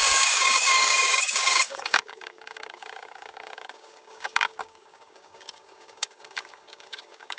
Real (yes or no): no